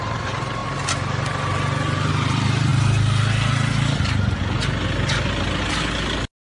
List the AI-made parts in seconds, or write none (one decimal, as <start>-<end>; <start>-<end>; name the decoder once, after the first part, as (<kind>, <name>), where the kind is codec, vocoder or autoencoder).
0.0-0.6 (vocoder, BigVGAN v2); 2.1-2.7